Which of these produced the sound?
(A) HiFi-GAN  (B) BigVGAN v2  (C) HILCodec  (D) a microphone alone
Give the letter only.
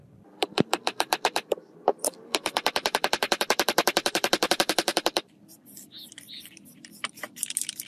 B